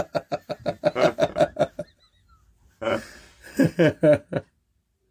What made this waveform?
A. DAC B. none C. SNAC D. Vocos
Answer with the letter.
B